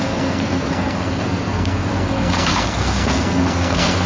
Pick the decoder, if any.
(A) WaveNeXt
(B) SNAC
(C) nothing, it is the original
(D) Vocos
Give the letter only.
B